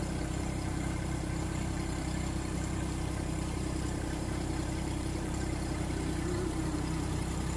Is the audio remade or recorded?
remade